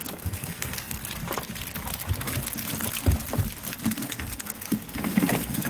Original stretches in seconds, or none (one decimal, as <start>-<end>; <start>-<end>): 1.0-4.0